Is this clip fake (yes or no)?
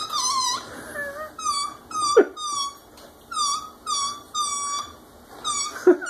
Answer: no